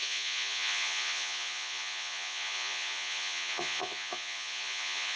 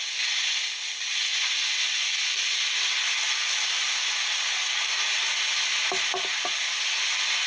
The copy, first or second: first